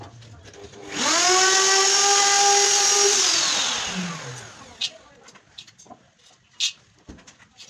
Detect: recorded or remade recorded